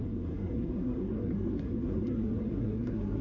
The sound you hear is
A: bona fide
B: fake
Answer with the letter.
B